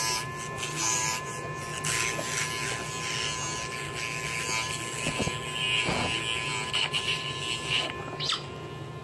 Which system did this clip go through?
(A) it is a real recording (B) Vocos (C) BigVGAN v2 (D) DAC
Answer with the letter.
A